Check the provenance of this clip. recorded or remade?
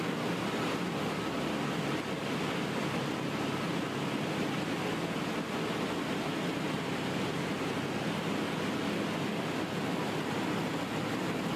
recorded